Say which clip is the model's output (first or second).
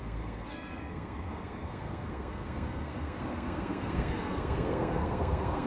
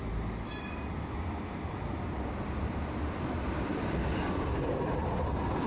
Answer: first